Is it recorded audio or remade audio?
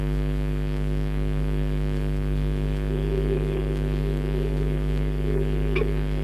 remade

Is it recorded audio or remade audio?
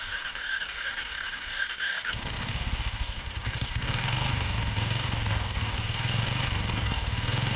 remade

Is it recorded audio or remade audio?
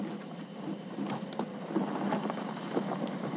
recorded